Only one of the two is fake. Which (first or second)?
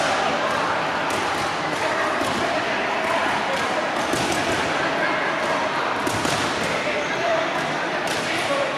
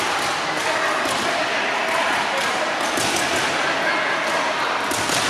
first